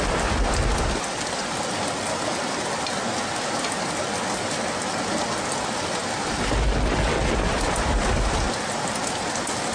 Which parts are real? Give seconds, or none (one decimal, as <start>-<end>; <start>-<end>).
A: 0.0-9.7